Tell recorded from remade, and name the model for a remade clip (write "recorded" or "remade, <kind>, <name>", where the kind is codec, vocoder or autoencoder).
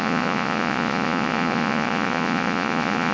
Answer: remade, vocoder, Vocos